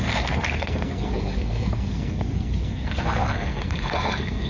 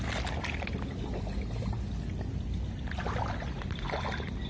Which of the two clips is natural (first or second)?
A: second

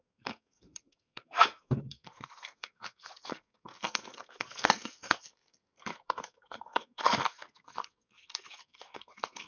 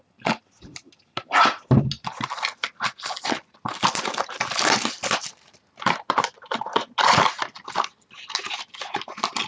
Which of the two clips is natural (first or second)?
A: second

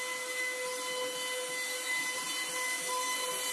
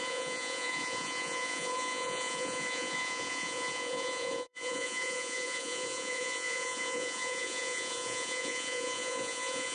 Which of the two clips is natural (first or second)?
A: first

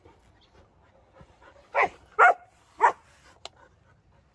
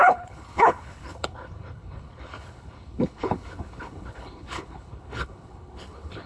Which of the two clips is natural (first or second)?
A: first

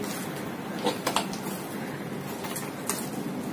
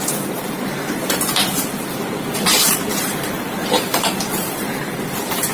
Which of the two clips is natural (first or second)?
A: first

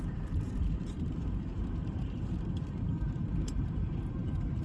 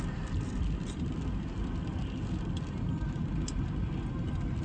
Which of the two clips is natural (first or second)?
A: second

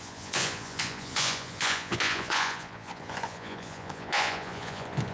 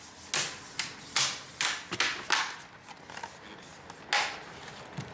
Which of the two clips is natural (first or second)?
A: second